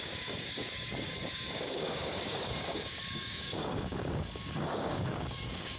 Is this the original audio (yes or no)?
no